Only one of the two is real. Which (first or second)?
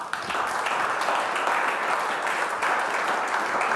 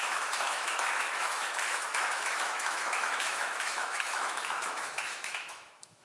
first